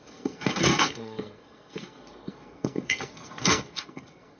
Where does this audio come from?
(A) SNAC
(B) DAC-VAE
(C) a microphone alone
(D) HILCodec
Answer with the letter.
A